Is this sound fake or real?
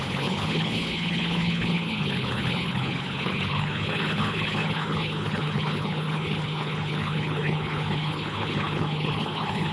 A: fake